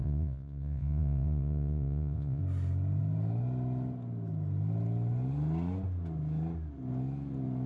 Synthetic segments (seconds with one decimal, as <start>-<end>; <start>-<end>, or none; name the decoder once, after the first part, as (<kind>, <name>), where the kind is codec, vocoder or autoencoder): 0.0-2.4 (vocoder, Vocos)